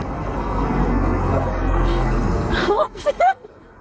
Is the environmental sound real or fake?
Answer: fake